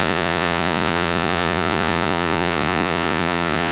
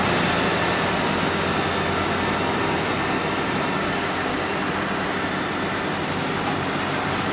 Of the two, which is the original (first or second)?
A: second